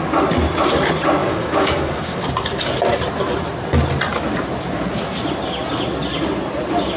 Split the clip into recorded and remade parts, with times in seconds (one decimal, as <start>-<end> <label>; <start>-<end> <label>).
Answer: 0.0-1.2 recorded; 1.2-2.3 remade; 2.3-7.0 recorded